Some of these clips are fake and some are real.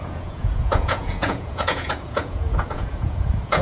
fake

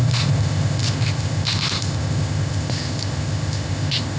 fake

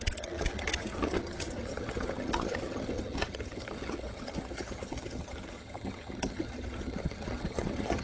fake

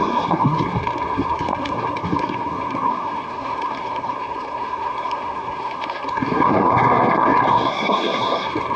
fake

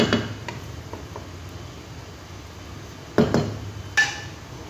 real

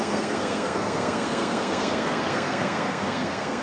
fake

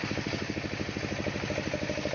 real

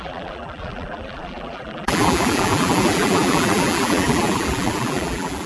fake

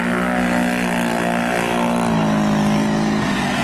real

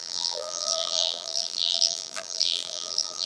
fake